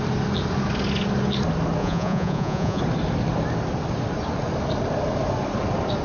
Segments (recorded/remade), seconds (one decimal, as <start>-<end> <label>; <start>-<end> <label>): 0.0-1.8 recorded; 1.8-2.8 remade; 2.8-6.0 recorded